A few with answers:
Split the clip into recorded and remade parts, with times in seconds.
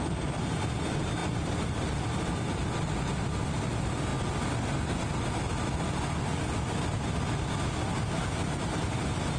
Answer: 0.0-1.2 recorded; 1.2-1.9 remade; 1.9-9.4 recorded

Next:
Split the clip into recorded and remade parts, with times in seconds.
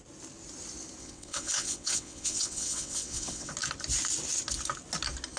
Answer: 0.0-1.0 recorded; 1.0-3.5 remade; 3.5-5.4 recorded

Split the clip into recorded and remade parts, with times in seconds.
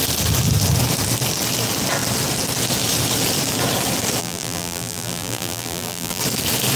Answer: 0.0-4.2 recorded; 4.2-6.2 remade; 6.2-6.8 recorded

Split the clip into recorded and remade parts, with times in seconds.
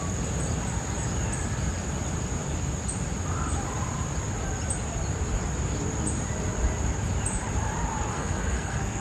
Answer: 0.0-8.1 recorded; 8.1-9.0 remade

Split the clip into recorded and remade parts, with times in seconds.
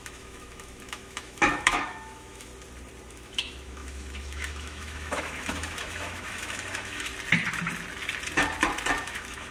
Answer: 0.0-2.5 remade; 2.5-3.1 recorded; 3.1-7.1 remade; 7.1-9.0 recorded; 9.0-9.5 remade